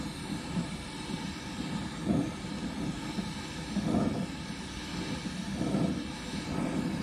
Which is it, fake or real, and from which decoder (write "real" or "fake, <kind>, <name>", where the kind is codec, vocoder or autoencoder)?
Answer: real